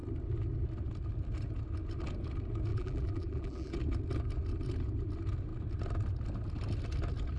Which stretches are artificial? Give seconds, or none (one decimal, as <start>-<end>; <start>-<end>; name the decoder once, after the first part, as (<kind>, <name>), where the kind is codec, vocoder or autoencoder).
2.7-3.7 (vocoder, BigVGAN v2)